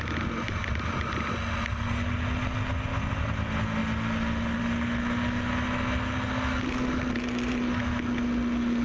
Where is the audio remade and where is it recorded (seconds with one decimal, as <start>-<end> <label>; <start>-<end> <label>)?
0.0-8.8 recorded